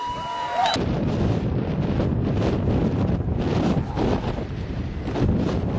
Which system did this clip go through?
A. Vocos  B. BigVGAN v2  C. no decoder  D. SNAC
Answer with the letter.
C